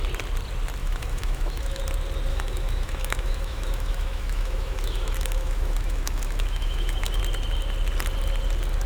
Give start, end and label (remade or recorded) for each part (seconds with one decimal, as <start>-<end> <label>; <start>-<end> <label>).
0.0-0.8 recorded; 0.8-1.8 remade; 1.8-2.3 recorded; 2.3-7.2 remade; 7.2-8.9 recorded